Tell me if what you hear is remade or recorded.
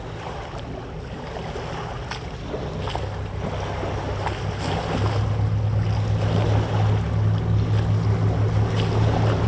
recorded